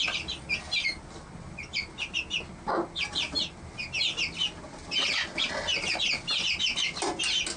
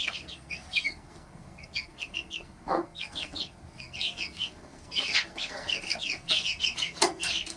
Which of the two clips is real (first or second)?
first